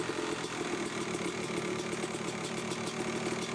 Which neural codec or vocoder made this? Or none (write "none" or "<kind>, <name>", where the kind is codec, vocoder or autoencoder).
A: none